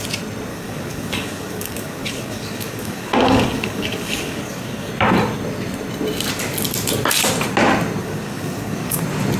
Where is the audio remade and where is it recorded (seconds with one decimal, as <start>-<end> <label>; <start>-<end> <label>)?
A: 0.0-0.5 recorded; 0.5-4.9 remade; 4.9-8.0 recorded; 8.0-9.0 remade; 9.0-9.4 recorded